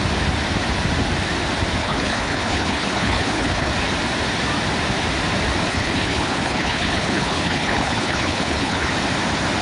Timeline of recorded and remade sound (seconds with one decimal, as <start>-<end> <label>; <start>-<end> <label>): 0.0-1.8 recorded; 1.8-3.7 remade; 3.7-5.7 recorded; 5.7-8.9 remade; 8.9-9.6 recorded